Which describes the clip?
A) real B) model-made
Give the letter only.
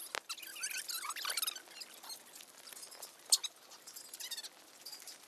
A